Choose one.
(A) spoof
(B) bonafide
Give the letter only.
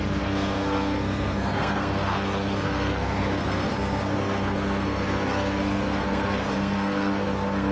A